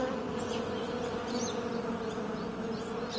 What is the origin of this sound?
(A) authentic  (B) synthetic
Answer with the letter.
A